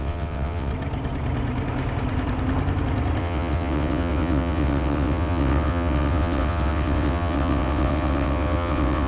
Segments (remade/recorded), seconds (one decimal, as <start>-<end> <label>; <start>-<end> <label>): 0.0-0.7 remade; 0.7-3.2 recorded; 3.2-9.1 remade